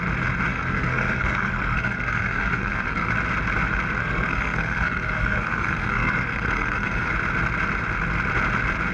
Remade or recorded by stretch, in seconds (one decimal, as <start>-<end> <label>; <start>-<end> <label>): 0.0-0.5 recorded; 0.5-3.1 remade; 3.1-4.0 recorded; 4.0-7.1 remade; 7.1-8.9 recorded